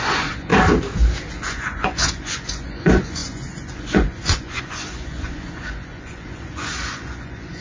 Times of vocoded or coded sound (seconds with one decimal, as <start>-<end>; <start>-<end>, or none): 0.0-0.5; 1.3-7.6